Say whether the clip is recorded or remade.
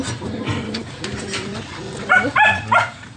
remade